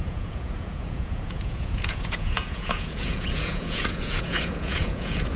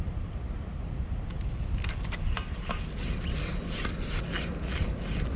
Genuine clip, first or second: second